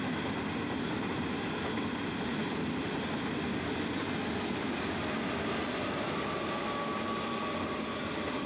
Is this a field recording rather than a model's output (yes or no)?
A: yes